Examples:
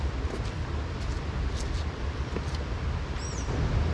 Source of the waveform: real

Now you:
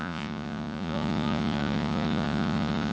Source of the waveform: fake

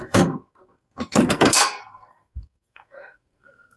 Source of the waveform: fake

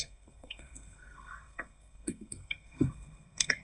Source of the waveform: fake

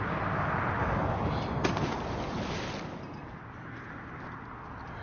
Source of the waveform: real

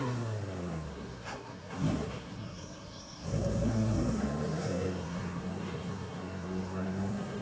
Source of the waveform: fake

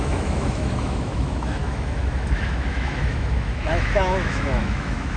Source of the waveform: fake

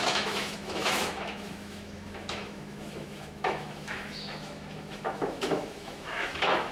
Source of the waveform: fake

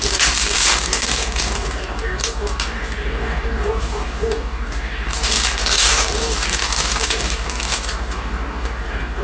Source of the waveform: fake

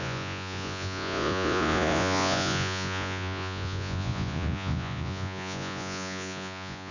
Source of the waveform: fake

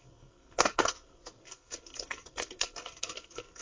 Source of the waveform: fake